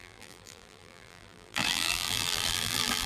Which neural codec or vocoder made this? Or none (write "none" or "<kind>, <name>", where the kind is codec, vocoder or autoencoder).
vocoder, BigVGAN v2